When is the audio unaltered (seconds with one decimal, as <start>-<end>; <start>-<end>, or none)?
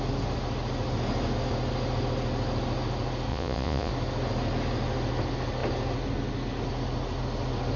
0.0-3.3; 3.9-7.8